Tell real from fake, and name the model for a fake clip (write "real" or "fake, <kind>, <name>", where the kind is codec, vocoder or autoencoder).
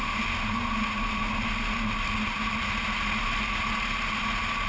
real